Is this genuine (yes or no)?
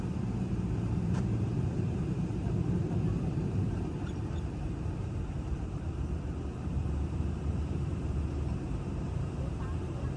no